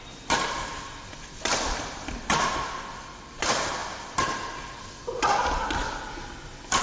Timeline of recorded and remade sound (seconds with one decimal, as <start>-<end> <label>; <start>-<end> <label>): 0.0-6.8 recorded